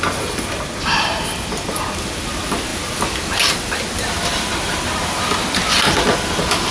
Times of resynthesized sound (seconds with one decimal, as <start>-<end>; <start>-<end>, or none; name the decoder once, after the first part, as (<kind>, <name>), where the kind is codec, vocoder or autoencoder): none